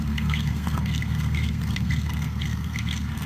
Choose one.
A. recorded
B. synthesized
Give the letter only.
B